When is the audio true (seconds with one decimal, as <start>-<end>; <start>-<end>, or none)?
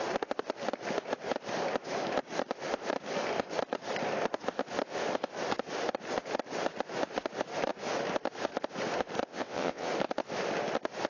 0.0-9.3; 9.9-11.1